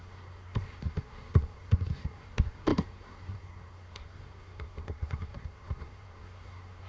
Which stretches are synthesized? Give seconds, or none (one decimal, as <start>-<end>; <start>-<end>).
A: 0.0-6.9